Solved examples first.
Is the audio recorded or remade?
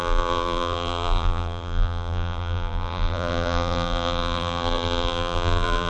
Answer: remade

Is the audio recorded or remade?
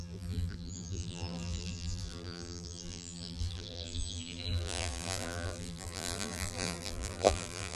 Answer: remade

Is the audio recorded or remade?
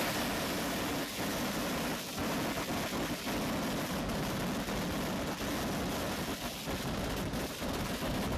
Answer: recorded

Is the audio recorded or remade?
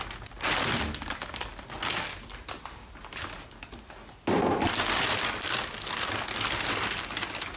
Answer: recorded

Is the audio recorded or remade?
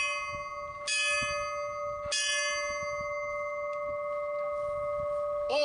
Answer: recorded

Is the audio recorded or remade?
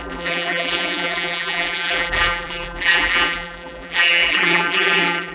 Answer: remade